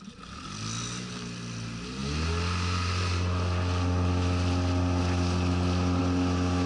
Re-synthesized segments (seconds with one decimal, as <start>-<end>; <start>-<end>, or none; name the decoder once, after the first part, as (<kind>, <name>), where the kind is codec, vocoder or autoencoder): none